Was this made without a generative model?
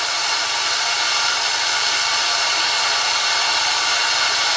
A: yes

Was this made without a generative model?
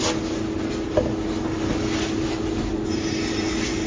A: yes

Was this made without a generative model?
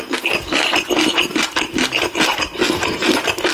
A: yes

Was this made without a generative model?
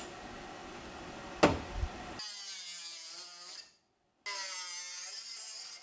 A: yes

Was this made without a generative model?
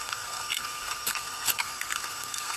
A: no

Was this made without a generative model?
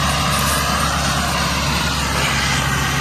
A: yes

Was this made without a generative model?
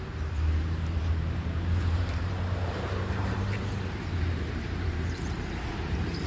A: no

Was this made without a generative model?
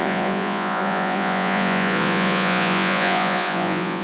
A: no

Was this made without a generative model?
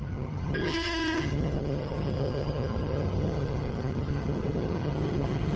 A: no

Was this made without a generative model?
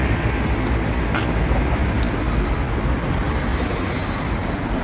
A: yes